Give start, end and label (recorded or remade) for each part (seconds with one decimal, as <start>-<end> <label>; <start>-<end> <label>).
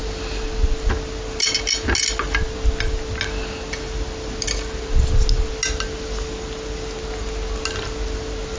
0.0-8.6 recorded